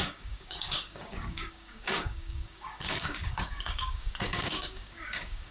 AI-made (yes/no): yes